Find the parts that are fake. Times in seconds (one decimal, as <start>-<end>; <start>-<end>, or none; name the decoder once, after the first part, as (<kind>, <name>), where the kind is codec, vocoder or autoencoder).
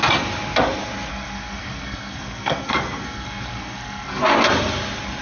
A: 1.1-4.2 (codec, SNAC)